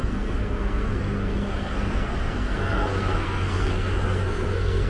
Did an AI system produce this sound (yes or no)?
yes